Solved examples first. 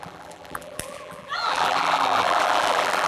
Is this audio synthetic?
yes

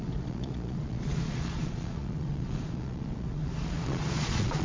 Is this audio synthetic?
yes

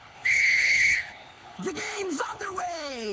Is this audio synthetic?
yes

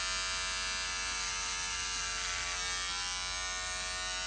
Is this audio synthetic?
no